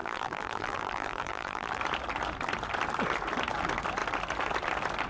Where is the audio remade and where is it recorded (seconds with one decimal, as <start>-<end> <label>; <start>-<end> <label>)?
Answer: 0.0-1.8 remade; 1.8-5.1 recorded